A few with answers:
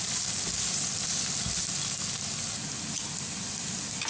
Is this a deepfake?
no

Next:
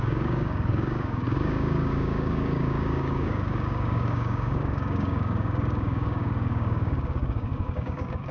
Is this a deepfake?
yes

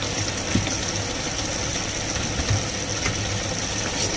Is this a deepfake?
no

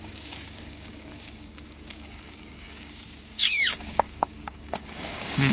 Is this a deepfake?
yes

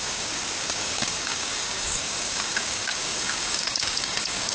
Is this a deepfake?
yes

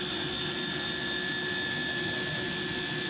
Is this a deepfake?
no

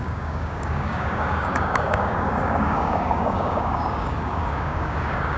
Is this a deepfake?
yes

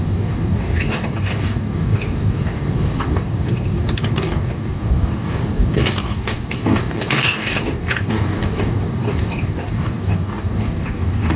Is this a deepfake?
yes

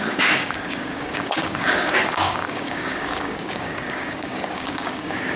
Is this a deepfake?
yes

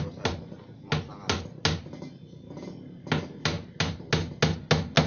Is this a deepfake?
no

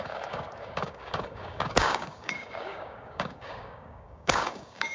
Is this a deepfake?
yes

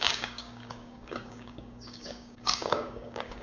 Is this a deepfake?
yes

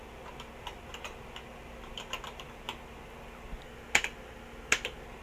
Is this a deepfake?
no